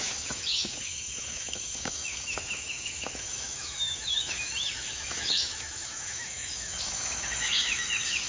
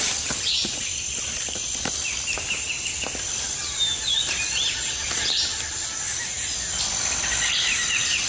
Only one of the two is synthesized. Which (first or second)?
first